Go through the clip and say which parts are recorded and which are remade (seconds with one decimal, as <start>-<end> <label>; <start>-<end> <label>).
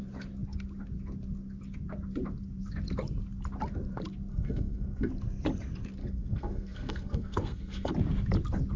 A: 0.0-4.3 recorded; 4.3-5.1 remade; 5.1-6.0 recorded; 6.0-7.9 remade; 7.9-8.8 recorded